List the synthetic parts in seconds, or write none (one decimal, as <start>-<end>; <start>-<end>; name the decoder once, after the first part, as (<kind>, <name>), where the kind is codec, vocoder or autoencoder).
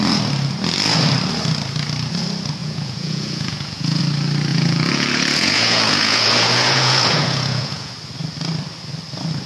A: 2.6-4.0 (vocoder, Vocos); 4.5-7.9